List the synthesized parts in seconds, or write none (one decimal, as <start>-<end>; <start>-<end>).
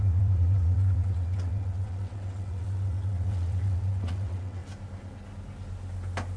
0.0-4.6